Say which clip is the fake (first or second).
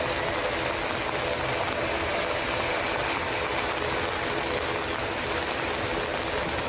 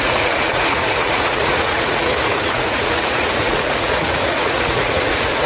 second